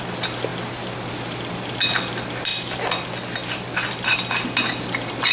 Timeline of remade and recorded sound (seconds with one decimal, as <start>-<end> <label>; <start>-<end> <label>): 0.0-5.3 recorded